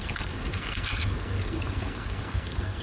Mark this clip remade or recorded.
remade